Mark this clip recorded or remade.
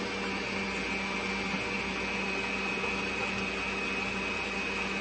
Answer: recorded